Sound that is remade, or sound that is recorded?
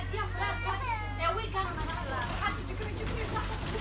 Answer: recorded